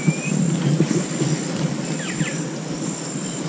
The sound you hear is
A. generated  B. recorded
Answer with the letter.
A